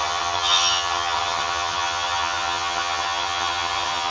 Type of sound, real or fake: fake